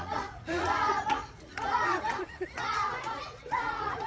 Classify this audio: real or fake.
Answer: fake